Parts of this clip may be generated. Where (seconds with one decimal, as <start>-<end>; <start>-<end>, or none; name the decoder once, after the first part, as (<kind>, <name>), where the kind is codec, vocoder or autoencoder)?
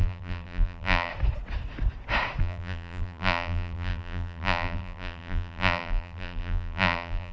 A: 0.0-1.1 (vocoder, BigVGAN v2); 2.4-7.3